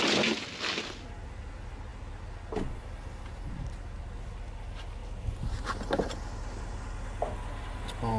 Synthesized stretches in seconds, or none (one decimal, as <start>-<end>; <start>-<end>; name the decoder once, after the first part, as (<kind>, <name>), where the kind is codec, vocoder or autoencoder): none

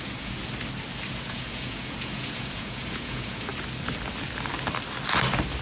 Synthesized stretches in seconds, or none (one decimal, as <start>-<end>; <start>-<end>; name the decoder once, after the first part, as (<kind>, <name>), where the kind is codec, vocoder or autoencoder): 0.0-0.4 (vocoder, Vocos); 1.1-3.5

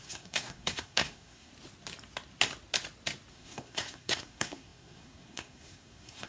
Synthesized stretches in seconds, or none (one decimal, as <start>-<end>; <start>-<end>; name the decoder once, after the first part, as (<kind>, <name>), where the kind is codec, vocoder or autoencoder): 0.0-1.5 (codec, SNAC); 3.3-6.3

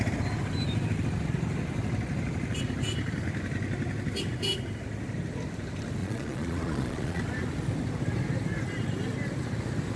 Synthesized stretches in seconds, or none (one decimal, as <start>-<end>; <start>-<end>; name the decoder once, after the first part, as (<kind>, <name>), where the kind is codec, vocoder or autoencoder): 6.0-7.2 (vocoder, Vocos)

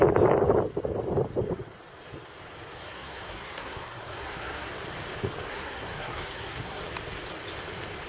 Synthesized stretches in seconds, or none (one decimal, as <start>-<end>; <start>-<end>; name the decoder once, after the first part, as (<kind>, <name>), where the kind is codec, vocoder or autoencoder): 2.8-4.7 (codec, SNAC); 5.5-6.8

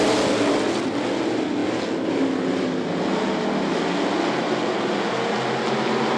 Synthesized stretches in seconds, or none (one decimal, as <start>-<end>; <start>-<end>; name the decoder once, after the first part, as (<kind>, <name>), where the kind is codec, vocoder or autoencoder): none